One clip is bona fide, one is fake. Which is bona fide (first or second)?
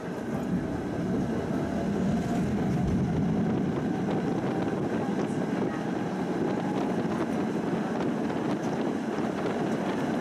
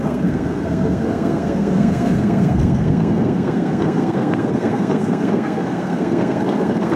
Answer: first